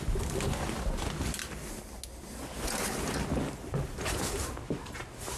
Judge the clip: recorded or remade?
recorded